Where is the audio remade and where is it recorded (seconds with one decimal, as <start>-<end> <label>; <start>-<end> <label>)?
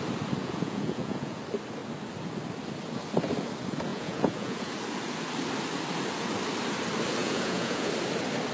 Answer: 0.0-0.4 recorded; 0.4-1.4 remade; 1.4-3.9 recorded; 3.9-4.7 remade; 4.7-7.2 recorded; 7.2-7.9 remade; 7.9-8.5 recorded